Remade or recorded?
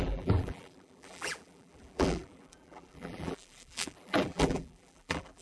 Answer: remade